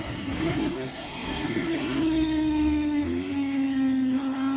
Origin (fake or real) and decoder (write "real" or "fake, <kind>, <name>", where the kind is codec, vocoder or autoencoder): fake, codec, SNAC